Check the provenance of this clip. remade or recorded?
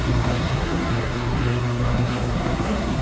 remade